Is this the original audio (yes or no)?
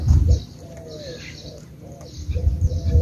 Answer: yes